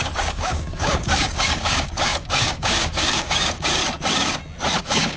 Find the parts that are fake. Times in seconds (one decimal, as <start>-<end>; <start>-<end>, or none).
0.0-3.8; 4.8-5.2